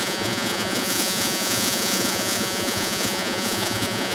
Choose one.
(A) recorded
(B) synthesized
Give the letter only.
B